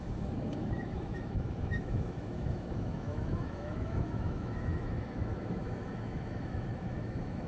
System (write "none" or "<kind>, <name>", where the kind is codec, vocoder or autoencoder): autoencoder, DAC-VAE